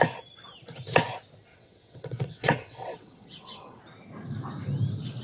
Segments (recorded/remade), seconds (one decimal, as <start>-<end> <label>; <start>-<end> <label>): 0.0-1.5 recorded; 1.5-3.8 remade; 3.8-5.2 recorded